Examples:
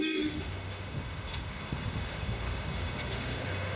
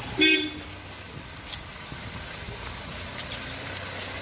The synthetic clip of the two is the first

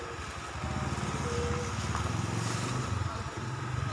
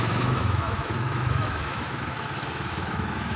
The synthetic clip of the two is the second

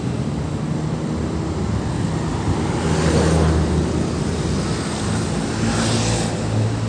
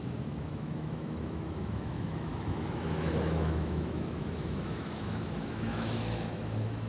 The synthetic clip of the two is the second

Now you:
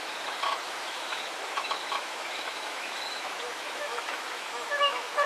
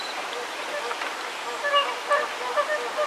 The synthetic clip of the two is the first